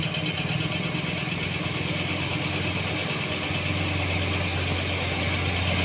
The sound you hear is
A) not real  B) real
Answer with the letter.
B